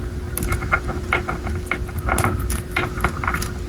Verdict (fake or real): real